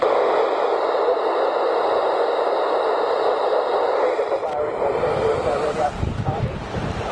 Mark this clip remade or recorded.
recorded